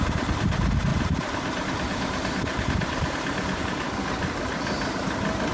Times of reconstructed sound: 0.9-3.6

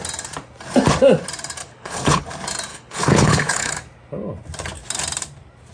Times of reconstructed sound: 1.6-2.2; 2.7-3.7

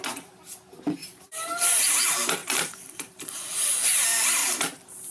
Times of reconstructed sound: 1.0-1.9; 2.4-3.7; 4.4-5.1

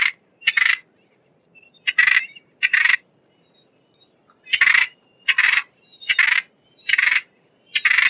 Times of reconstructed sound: 0.0-1.5; 2.5-4.2; 4.8-8.1